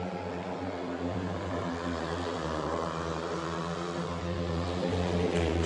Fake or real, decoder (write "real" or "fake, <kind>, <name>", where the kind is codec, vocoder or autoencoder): fake, vocoder, Vocos